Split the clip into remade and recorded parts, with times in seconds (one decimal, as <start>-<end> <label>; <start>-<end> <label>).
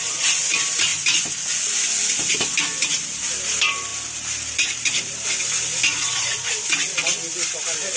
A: 0.0-8.0 recorded